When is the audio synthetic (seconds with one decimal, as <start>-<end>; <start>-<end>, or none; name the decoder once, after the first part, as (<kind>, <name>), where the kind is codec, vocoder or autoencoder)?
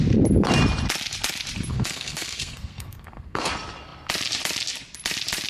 1.7-3.5 (codec, SNAC)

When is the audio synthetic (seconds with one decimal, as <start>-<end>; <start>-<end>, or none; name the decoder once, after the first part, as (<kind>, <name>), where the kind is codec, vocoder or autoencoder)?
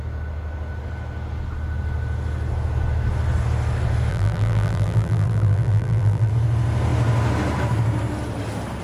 4.1-6.3 (vocoder, BigVGAN v2)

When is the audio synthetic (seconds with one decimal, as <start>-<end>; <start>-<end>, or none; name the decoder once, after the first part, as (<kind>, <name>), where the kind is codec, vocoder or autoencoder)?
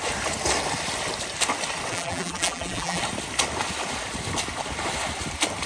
1.9-3.0 (vocoder, BigVGAN v2)